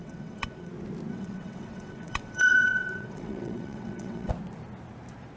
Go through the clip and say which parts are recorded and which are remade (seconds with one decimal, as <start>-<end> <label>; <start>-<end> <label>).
0.0-0.7 remade; 0.7-1.1 recorded; 1.1-4.3 remade; 4.3-5.4 recorded